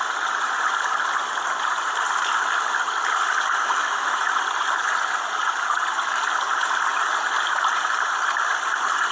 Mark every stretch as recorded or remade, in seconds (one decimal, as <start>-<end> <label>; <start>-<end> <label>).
0.0-3.8 recorded; 3.8-4.3 remade; 4.3-9.1 recorded